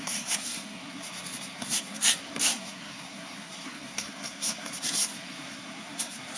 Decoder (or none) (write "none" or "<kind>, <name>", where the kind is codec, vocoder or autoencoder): codec, SNAC